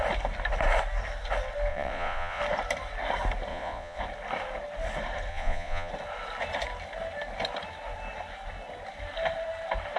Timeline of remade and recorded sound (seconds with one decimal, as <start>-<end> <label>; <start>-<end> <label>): 0.0-1.7 recorded; 1.7-2.4 remade; 2.4-3.5 recorded; 3.5-4.0 remade; 4.0-5.3 recorded; 5.3-5.9 remade; 5.9-10.0 recorded